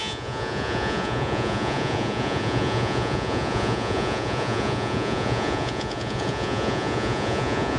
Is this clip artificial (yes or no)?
yes